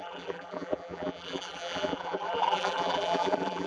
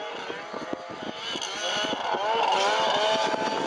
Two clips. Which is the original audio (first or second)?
second